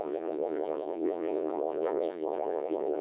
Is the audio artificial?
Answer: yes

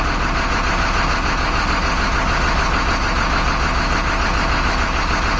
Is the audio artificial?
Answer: no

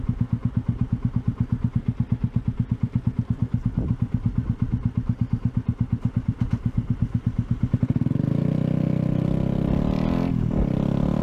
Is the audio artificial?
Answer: no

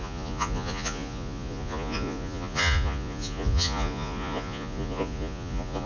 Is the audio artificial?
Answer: yes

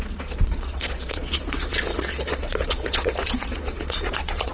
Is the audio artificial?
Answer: yes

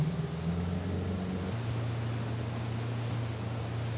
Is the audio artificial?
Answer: no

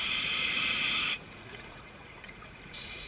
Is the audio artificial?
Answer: yes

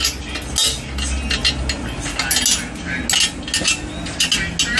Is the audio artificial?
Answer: no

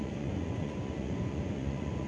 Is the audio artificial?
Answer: yes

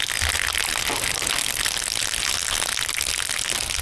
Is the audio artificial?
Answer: no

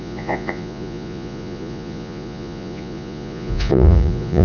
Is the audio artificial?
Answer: yes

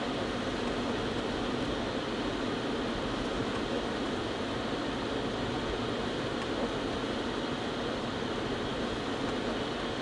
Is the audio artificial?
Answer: no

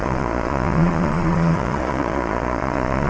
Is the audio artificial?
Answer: yes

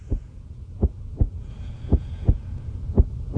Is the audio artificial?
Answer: yes